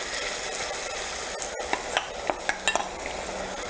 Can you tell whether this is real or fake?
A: real